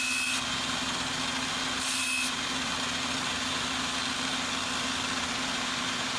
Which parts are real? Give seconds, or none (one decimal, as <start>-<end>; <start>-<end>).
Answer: 0.0-6.2